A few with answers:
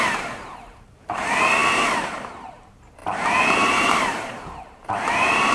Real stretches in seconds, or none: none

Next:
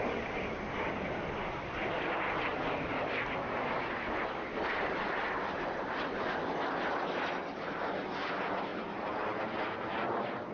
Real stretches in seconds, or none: 0.0-10.5

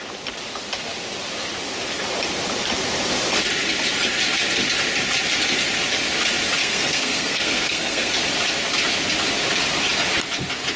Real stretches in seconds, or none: 0.0-6.6; 8.1-10.8

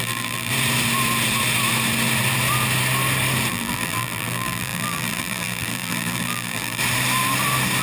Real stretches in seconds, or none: 0.5-3.5; 6.8-7.8